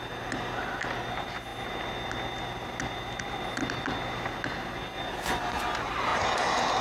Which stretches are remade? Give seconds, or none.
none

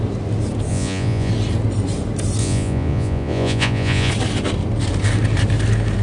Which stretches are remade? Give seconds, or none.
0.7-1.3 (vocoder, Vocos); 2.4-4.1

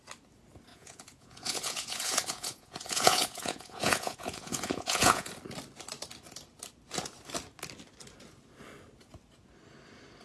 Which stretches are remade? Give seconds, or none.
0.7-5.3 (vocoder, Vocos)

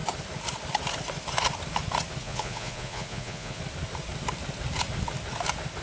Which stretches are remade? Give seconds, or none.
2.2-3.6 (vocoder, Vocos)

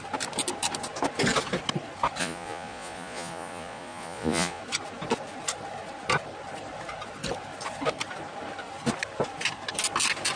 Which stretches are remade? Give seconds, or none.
2.2-4.6 (vocoder, Vocos)

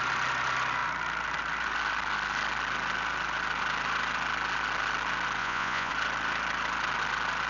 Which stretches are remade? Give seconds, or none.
5.4-5.9 (vocoder, Vocos)

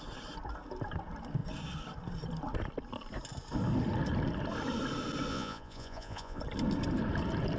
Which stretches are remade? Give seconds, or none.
5.3-6.4 (vocoder, Vocos)